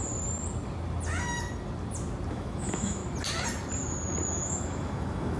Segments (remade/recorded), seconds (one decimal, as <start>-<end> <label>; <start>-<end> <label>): 0.0-2.3 recorded; 2.3-3.0 remade; 3.0-4.3 recorded; 4.3-5.4 remade